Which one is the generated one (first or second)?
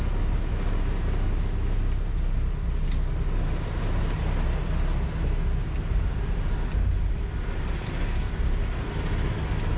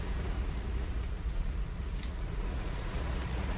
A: second